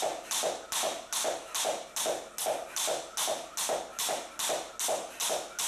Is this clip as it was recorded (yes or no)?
yes